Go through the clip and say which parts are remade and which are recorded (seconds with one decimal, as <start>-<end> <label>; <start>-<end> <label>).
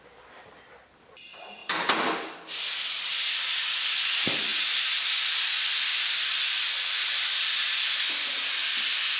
0.0-4.5 remade; 4.5-5.3 recorded; 5.3-9.2 remade